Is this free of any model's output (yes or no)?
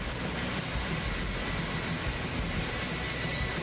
yes